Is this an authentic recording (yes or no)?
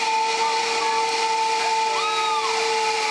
yes